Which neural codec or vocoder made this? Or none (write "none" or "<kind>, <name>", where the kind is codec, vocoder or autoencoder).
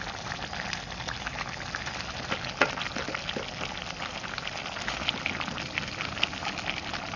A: none